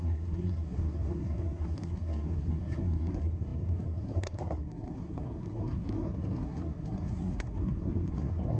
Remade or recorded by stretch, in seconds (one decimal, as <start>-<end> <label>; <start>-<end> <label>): 0.0-8.6 remade